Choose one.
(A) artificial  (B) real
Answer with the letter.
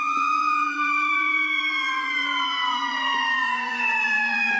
A